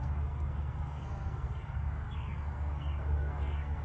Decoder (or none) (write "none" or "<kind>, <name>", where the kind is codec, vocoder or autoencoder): codec, SNAC